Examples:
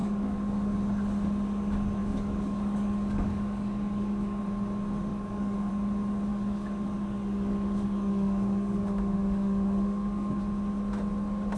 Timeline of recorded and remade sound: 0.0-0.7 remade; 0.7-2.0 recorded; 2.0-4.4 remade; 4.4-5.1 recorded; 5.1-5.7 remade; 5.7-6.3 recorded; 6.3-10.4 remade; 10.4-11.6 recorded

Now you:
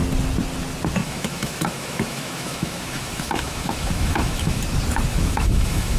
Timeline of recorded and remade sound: 0.0-1.0 recorded; 1.0-4.6 remade; 4.6-5.1 recorded; 5.1-6.0 remade